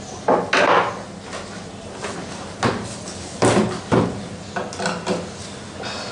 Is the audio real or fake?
real